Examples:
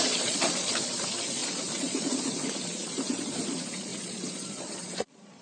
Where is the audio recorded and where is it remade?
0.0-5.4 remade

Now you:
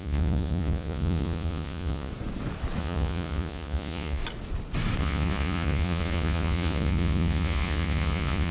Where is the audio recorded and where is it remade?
0.0-2.1 remade; 2.1-2.8 recorded; 2.8-4.2 remade; 4.2-5.0 recorded; 5.0-8.5 remade

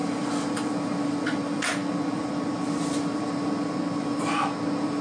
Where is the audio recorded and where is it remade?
0.0-5.0 recorded

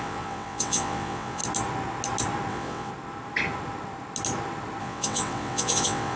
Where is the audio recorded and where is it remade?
0.0-1.4 remade; 1.4-2.5 recorded; 2.5-2.9 remade; 2.9-4.8 recorded; 4.8-6.2 remade

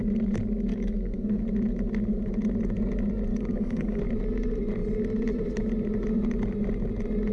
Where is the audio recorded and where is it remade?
0.0-0.7 recorded; 0.7-1.3 remade; 1.3-3.3 recorded; 3.3-4.0 remade; 4.0-7.3 recorded